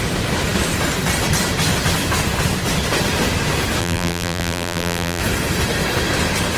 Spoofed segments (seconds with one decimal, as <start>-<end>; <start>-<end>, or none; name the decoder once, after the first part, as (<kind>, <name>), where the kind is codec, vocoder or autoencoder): 3.8-5.2 (vocoder, BigVGAN v2)